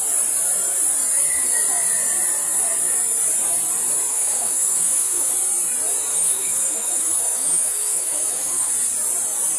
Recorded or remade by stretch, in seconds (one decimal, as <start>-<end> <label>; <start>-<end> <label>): 0.0-4.1 recorded; 4.1-5.3 remade; 5.3-6.1 recorded; 6.1-8.7 remade; 8.7-9.6 recorded